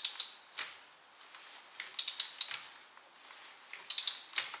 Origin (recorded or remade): recorded